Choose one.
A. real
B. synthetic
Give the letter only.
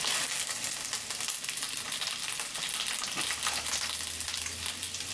A